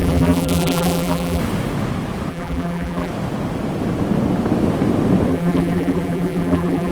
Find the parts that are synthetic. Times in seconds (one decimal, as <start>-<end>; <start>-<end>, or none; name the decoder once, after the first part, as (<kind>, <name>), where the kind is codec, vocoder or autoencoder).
0.0-1.4 (vocoder, BigVGAN v2); 2.3-3.1; 5.3-6.9

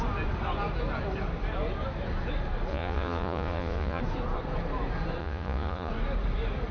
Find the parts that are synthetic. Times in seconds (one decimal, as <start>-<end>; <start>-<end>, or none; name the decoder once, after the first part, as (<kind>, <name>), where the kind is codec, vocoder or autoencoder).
2.7-4.0 (vocoder, Vocos); 5.2-5.9